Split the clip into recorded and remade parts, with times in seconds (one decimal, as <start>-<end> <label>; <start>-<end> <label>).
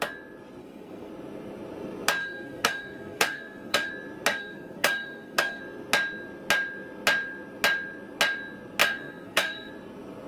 0.0-0.6 recorded; 0.6-1.1 remade; 1.1-2.2 recorded; 2.2-3.9 remade; 3.9-4.3 recorded; 4.3-5.6 remade; 5.6-8.8 recorded; 8.8-9.7 remade; 9.7-10.3 recorded